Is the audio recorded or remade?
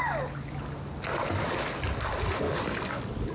recorded